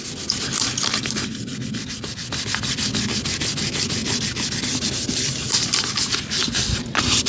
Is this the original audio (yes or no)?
yes